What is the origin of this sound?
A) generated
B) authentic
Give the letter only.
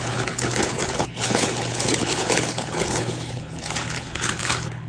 A